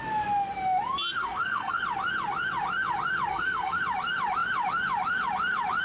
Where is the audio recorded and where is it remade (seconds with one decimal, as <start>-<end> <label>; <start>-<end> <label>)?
0.0-1.2 recorded; 1.2-1.8 remade; 1.8-3.3 recorded; 3.3-3.8 remade; 3.8-5.8 recorded